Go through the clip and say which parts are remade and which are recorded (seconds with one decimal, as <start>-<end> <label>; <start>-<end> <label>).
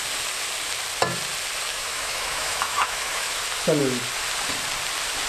0.0-1.7 recorded; 1.7-3.4 remade; 3.4-5.3 recorded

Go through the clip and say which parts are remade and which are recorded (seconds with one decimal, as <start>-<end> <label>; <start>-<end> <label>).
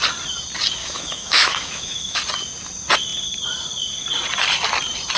0.0-0.8 recorded; 0.8-2.2 remade; 2.2-5.2 recorded